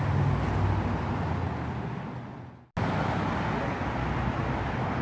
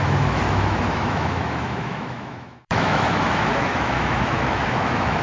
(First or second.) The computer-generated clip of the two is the second